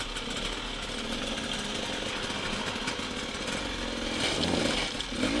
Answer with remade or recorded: recorded